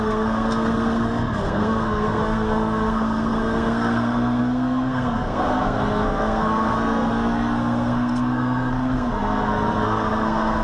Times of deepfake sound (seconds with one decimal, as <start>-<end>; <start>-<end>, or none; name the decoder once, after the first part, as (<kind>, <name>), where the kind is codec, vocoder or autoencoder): 0.0-10.6 (codec, SNAC)